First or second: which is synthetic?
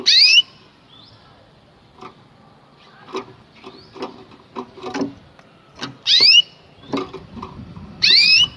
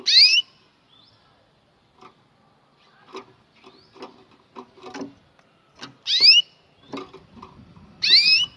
first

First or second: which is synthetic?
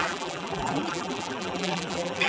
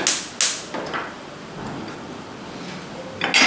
first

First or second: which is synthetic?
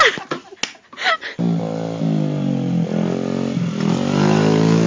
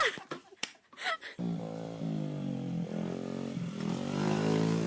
second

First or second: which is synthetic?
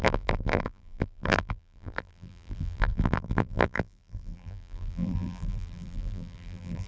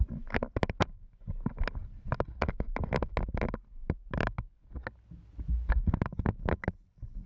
first